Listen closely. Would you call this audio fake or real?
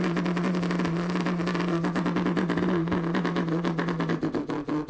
real